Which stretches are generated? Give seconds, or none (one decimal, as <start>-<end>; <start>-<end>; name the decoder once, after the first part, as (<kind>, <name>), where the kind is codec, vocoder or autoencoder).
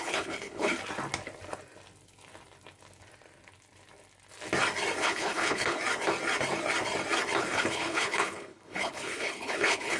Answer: 0.0-0.7 (codec, HILCodec); 5.0-5.8; 7.4-10.0